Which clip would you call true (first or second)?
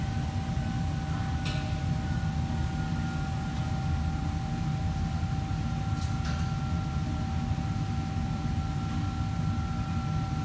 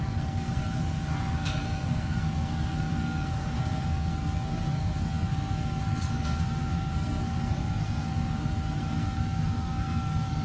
first